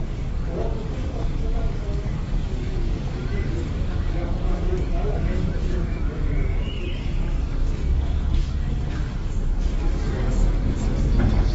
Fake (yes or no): yes